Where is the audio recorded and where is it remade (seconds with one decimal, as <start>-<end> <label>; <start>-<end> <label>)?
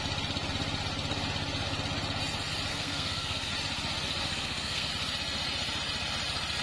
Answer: 0.0-2.7 recorded; 2.7-3.5 remade; 3.5-4.2 recorded; 4.2-4.9 remade; 4.9-6.6 recorded